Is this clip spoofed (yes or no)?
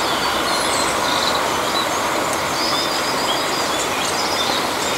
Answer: no